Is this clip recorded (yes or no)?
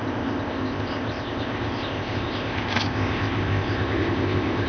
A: no